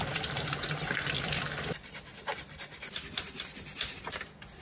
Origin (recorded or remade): remade